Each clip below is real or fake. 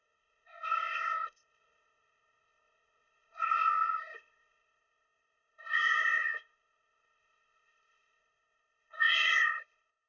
fake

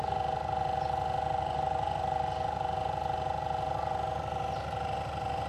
real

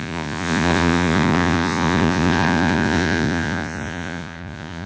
fake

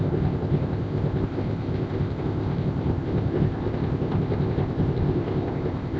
fake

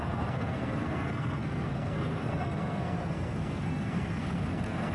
fake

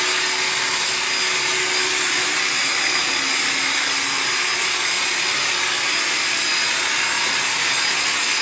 real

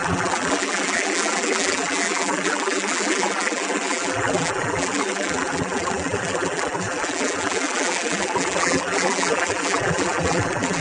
fake